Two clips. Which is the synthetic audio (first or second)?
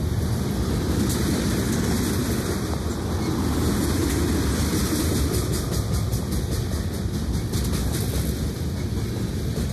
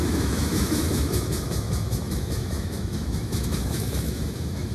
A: second